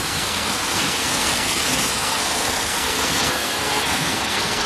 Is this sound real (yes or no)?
no